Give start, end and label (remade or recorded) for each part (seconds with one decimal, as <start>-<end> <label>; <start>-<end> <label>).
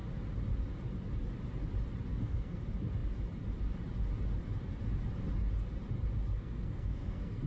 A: 0.0-2.1 recorded; 2.1-2.6 remade; 2.6-6.3 recorded; 6.3-7.5 remade